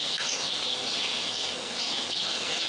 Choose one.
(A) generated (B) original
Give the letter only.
A